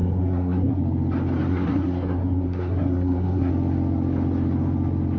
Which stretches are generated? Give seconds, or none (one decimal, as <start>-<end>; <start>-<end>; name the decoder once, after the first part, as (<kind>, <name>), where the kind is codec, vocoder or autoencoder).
0.0-0.8 (codec, SNAC); 1.5-3.5

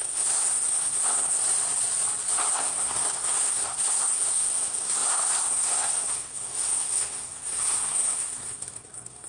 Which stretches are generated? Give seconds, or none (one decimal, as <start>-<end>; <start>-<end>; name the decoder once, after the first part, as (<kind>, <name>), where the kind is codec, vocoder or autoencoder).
0.0-1.4 (codec, SNAC); 2.5-9.3

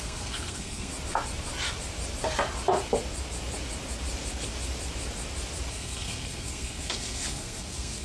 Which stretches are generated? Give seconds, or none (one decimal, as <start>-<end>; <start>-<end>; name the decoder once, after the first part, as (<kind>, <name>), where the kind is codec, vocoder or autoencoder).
0.0-0.9 (codec, SNAC); 5.7-8.0

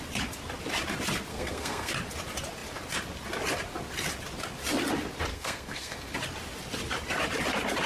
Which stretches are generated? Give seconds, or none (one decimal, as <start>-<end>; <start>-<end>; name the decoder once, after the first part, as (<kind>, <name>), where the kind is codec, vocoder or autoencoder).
1.3-1.9 (codec, SNAC); 5.3-6.1

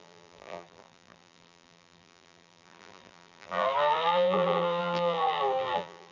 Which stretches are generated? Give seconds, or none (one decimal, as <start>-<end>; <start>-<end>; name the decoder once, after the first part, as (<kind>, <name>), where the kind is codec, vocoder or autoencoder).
0.0-6.1 (vocoder, BigVGAN v2)

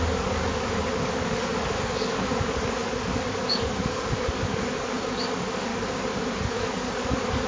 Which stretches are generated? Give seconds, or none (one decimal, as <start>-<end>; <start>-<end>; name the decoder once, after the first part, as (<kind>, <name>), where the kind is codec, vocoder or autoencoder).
0.0-5.7 (codec, DAC); 6.5-7.5